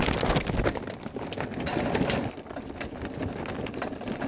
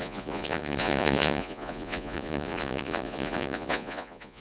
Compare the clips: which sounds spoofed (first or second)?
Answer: second